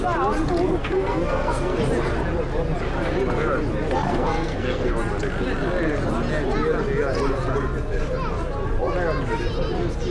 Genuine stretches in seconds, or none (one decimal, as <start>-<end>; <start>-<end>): 0.0-0.8; 1.8-4.1; 4.9-10.1

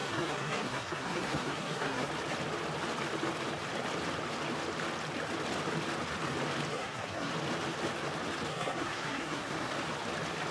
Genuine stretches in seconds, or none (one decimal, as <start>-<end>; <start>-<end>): 2.1-6.7; 7.3-8.5; 9.7-10.5

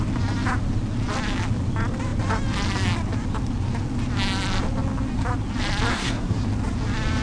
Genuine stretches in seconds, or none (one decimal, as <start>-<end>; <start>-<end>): 0.0-5.9; 6.4-7.2

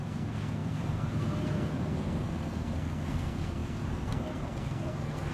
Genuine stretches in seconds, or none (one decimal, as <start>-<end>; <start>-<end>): none

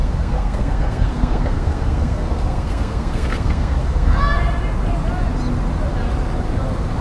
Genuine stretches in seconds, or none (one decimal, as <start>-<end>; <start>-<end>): 4.2-7.0